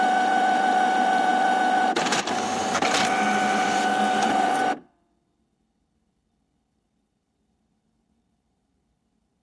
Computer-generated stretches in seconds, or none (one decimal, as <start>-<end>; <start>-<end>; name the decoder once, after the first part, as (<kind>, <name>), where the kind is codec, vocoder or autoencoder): 0.0-4.6 (vocoder, BigVGAN v2); 6.7-9.4